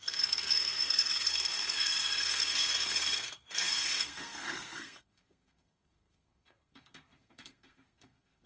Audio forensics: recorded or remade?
remade